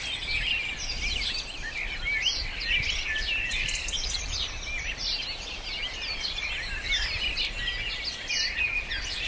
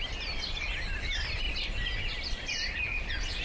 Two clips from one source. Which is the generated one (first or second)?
second